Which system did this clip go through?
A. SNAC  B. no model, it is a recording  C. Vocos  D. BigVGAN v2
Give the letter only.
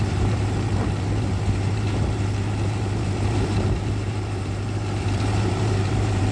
D